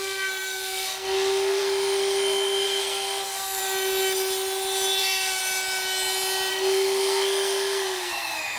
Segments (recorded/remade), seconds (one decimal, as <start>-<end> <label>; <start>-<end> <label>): 0.0-3.6 remade; 3.6-5.0 recorded; 5.0-5.4 remade; 5.4-6.5 recorded; 6.5-8.6 remade